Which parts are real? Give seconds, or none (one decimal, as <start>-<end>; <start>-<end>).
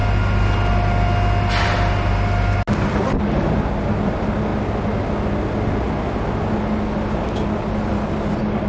0.0-8.7